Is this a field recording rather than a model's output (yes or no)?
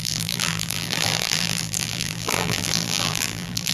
no